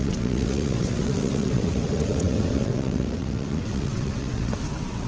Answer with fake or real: fake